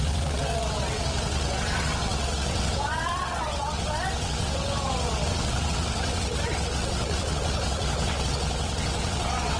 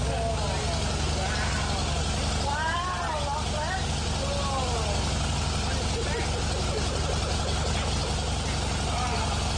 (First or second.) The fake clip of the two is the first